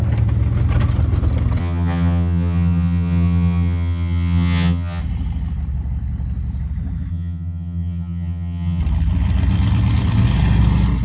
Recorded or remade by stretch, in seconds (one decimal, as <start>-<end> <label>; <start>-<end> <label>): 0.0-1.6 recorded; 1.6-5.0 remade; 5.0-7.1 recorded; 7.1-8.8 remade; 8.8-11.0 recorded

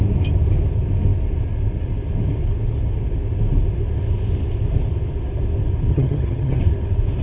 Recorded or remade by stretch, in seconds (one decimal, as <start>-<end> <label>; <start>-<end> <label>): 0.0-5.9 recorded; 5.9-6.6 remade; 6.6-7.2 recorded

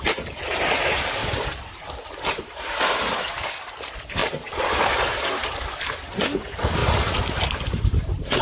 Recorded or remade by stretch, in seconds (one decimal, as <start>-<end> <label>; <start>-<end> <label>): 0.0-8.4 recorded

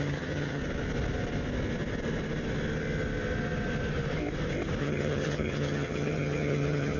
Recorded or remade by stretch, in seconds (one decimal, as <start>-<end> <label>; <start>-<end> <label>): 0.0-0.6 remade; 0.6-4.8 recorded; 4.8-7.0 remade

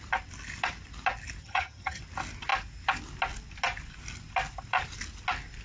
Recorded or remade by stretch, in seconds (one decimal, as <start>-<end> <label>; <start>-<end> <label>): 0.0-1.4 recorded; 1.4-2.0 remade; 2.0-5.6 recorded